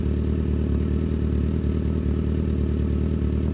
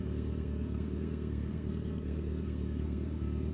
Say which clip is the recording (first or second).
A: first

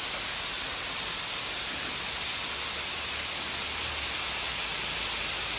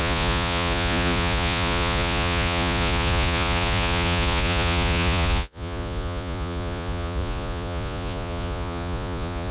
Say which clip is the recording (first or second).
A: first